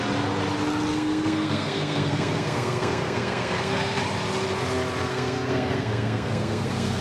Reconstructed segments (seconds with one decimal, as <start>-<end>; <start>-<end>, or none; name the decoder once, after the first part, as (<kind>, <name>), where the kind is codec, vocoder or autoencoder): 0.9-4.0 (codec, SNAC); 5.1-7.0